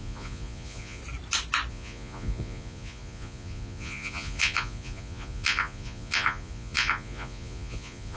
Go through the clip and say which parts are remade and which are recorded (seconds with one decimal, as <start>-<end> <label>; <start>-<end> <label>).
0.0-1.0 remade; 1.0-1.7 recorded; 1.7-8.2 remade